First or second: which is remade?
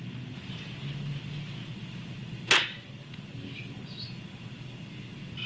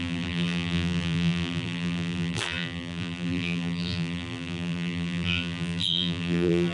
second